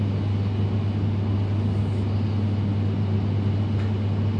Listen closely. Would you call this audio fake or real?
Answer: real